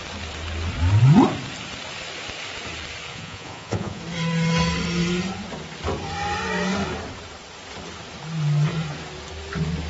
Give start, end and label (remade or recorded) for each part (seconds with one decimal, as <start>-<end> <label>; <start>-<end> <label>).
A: 0.0-3.1 recorded; 3.1-4.0 remade; 4.0-9.9 recorded